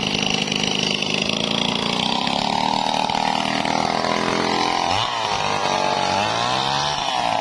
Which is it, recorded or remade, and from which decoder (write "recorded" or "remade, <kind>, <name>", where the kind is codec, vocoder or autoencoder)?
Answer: recorded